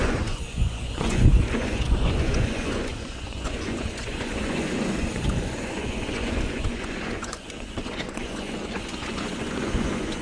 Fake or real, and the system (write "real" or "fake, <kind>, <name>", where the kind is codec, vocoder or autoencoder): fake, vocoder, Vocos